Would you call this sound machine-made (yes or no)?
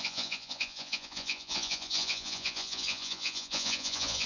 yes